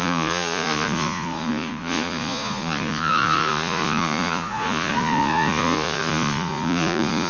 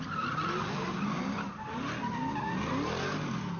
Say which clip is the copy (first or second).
first